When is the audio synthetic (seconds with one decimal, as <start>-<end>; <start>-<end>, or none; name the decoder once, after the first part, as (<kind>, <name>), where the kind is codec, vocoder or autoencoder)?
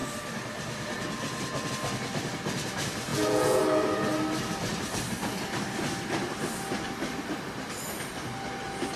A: 3.1-3.6 (vocoder, Vocos)